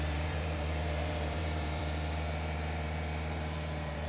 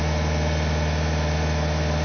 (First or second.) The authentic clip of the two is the second